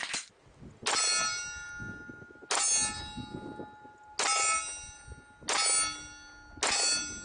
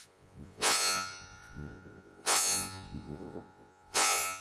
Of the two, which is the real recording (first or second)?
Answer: first